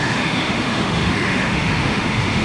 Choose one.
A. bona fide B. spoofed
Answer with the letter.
B